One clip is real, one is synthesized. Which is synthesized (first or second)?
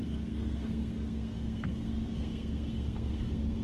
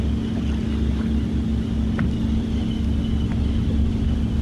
first